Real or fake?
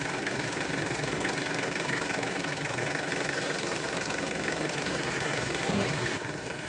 fake